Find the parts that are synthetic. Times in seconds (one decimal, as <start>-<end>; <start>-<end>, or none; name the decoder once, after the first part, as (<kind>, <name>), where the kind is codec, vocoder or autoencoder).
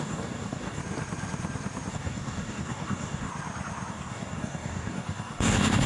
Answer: 0.0-0.8 (codec, DAC); 1.9-3.3; 3.9-5.9